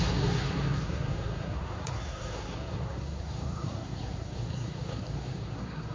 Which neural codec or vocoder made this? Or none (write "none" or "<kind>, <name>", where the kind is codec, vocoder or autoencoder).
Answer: codec, SNAC